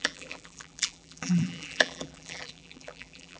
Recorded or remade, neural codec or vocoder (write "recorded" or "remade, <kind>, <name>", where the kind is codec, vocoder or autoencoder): remade, vocoder, BigVGAN v2